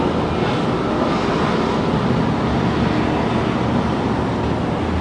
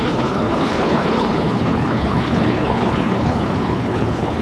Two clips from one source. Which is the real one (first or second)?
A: first